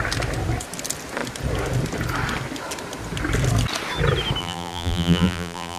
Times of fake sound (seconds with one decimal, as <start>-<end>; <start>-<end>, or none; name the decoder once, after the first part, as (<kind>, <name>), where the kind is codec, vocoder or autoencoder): 4.4-5.8 (vocoder, BigVGAN v2)